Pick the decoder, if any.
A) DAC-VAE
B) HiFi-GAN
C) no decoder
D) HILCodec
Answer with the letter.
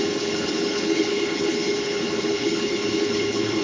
D